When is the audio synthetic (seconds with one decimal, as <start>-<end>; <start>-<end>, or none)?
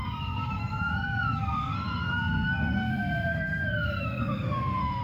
0.0-5.0